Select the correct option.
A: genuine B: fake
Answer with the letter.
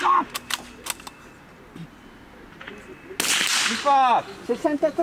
A